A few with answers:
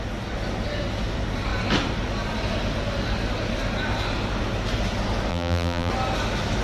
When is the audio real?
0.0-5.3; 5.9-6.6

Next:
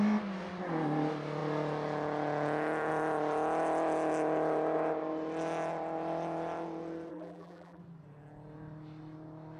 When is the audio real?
0.0-7.1; 7.8-9.6